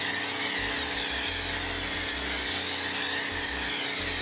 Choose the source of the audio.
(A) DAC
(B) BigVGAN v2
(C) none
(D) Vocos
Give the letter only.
C